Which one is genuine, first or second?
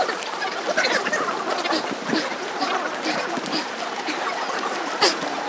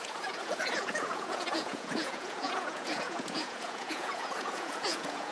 first